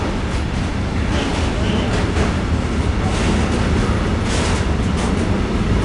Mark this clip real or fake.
real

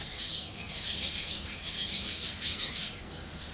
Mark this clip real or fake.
fake